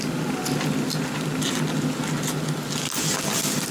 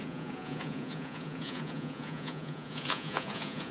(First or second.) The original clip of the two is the first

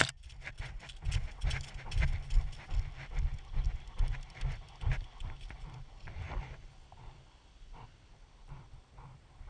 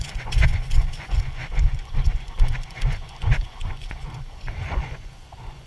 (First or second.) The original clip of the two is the first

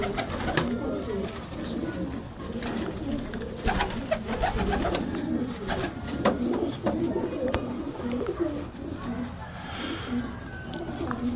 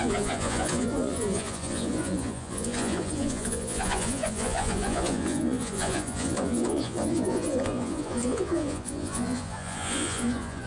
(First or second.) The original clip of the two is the first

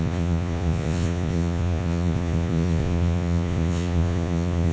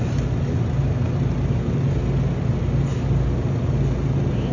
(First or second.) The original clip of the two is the second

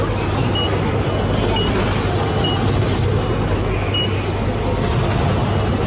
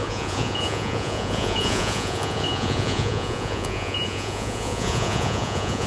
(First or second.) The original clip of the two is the first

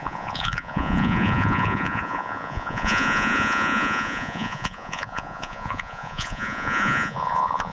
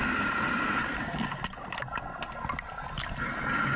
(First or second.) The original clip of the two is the second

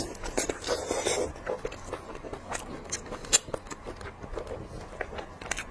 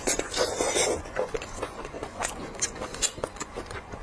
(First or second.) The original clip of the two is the first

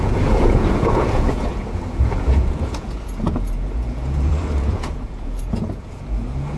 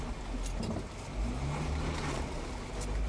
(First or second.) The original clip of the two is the second